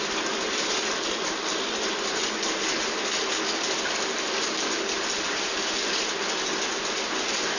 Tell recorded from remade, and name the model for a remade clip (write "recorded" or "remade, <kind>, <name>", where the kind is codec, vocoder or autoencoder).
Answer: recorded